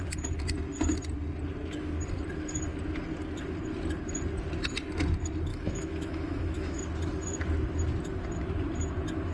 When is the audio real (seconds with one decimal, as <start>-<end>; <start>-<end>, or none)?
0.0-5.5; 6.8-9.3